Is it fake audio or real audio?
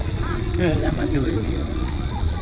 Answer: fake